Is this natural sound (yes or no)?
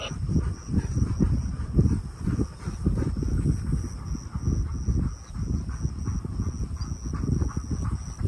yes